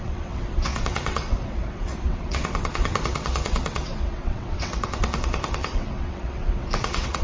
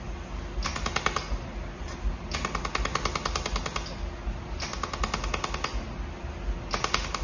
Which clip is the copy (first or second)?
first